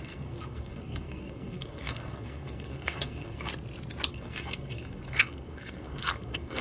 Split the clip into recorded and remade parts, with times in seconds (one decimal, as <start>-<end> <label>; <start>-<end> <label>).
0.0-3.5 remade; 3.5-4.1 recorded; 4.1-6.6 remade